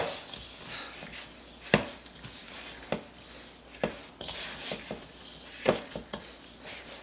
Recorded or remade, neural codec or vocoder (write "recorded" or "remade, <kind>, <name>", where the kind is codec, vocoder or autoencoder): recorded